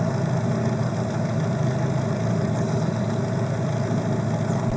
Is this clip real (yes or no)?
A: yes